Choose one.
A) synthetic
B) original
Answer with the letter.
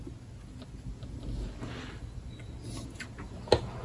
B